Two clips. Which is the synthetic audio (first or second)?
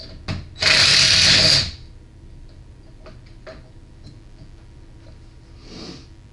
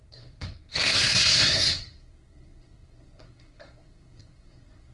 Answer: second